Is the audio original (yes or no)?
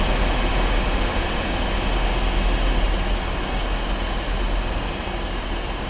yes